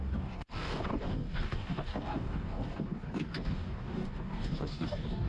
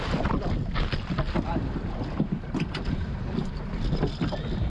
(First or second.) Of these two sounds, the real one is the second